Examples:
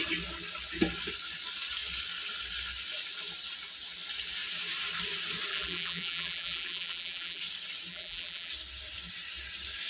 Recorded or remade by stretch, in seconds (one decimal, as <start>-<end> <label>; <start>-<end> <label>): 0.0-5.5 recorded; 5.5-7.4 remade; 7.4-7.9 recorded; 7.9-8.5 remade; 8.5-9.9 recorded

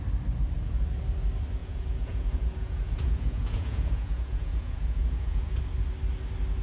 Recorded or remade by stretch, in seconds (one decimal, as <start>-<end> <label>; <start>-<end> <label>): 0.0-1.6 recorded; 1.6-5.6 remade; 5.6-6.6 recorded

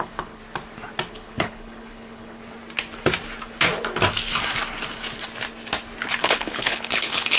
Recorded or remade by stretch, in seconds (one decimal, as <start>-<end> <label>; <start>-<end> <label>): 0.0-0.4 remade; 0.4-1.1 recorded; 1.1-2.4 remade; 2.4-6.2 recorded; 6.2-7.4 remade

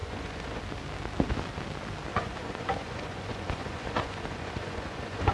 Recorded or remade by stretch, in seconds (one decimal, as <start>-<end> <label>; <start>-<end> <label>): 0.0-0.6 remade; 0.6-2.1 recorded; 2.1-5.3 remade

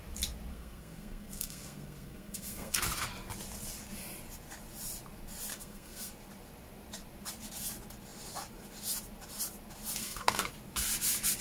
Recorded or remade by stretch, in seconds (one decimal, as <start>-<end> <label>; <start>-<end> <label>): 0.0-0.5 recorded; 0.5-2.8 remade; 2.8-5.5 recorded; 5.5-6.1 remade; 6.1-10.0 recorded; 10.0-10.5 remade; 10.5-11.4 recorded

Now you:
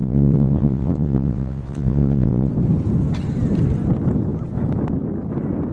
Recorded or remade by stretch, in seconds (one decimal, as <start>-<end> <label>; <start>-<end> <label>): 0.0-2.5 remade; 2.5-5.7 recorded

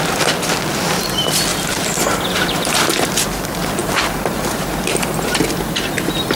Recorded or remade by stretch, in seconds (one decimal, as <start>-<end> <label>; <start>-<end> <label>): 0.0-1.5 recorded; 1.5-3.1 remade; 3.1-3.8 recorded; 3.8-5.4 remade; 5.4-6.4 recorded